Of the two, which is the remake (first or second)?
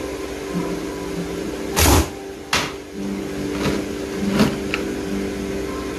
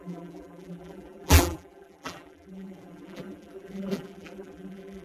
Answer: second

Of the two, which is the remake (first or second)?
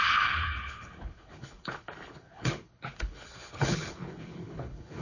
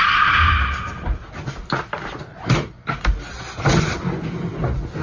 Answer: first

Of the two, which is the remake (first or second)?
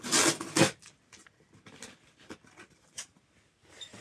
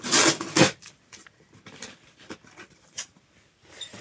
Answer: second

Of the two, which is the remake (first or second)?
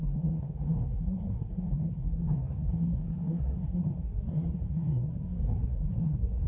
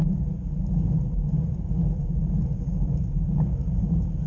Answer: first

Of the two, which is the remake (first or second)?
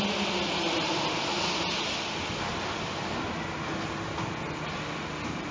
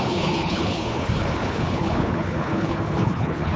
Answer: second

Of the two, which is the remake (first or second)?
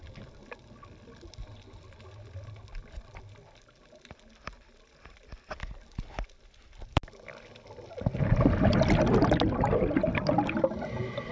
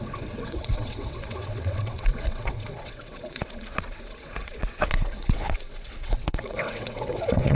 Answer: second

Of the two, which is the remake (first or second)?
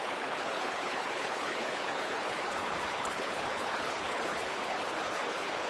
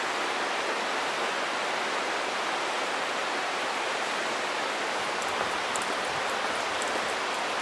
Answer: first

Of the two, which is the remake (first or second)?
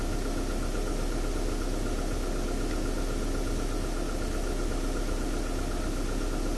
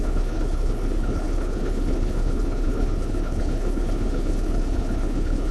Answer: second